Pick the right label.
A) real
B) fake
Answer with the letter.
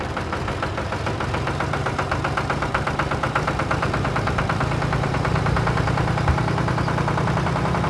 B